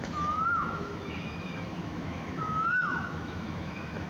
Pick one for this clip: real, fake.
fake